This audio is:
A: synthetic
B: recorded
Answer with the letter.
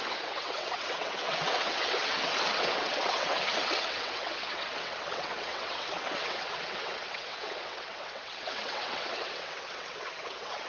A